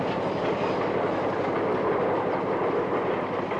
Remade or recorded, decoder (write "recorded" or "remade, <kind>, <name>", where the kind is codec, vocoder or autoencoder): recorded